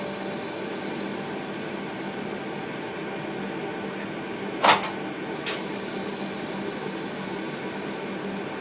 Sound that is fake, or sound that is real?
real